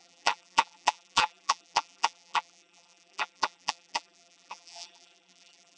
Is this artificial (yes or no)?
yes